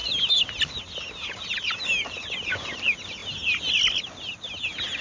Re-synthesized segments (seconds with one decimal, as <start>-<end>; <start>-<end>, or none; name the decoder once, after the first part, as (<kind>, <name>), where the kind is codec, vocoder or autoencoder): none